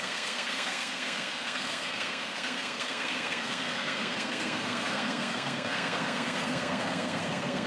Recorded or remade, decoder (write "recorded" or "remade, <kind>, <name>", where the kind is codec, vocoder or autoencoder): remade, codec, SNAC